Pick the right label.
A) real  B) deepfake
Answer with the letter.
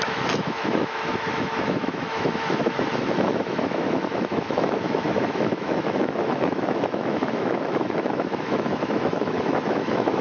B